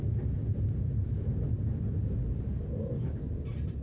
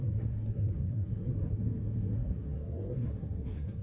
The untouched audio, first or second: first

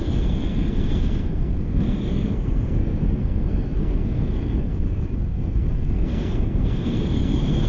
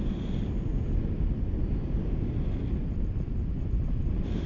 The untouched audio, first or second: second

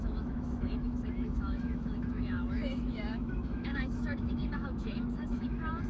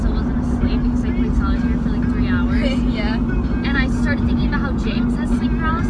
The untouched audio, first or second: second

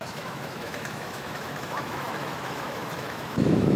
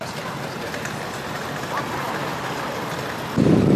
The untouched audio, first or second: second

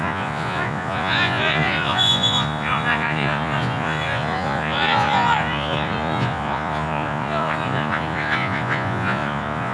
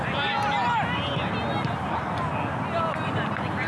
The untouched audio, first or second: second